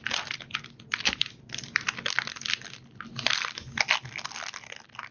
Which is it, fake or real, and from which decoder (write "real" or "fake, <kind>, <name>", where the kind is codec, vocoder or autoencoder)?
real